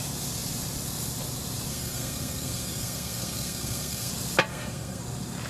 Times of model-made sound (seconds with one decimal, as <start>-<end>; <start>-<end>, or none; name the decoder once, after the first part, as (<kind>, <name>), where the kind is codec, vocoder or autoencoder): 1.7-4.1 (codec, SNAC); 4.5-5.0